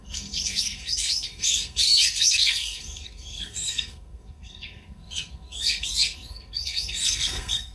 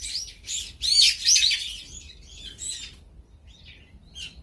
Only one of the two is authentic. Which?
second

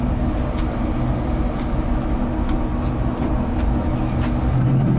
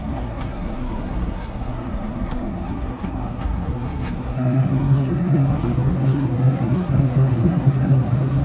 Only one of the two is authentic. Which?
first